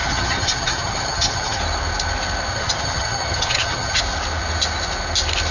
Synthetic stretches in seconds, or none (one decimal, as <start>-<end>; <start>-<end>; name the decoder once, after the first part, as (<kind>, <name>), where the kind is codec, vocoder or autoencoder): 0.0-1.6 (vocoder, HiFi-GAN); 2.5-4.0